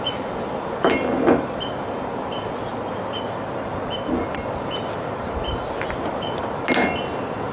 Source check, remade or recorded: recorded